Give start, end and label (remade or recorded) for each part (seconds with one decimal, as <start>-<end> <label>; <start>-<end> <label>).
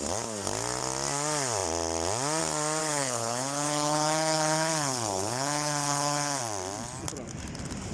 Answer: 0.0-2.8 recorded; 2.8-6.4 remade; 6.4-7.9 recorded